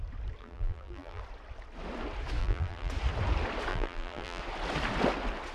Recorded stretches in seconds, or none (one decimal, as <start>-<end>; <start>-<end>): 0.0-0.4; 1.2-2.4; 2.9-3.7; 4.4-5.5